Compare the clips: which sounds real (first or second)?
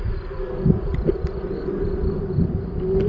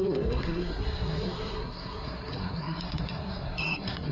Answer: first